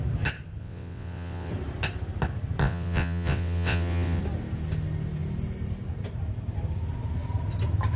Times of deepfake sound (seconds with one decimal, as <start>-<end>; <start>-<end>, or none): 0.6-1.5; 2.6-4.2